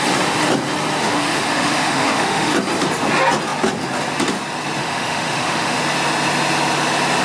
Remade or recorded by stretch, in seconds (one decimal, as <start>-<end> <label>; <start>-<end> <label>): 0.0-1.0 recorded; 1.0-2.5 remade; 2.5-4.8 recorded; 4.8-5.8 remade; 5.8-7.2 recorded